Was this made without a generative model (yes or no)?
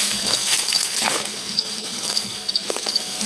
no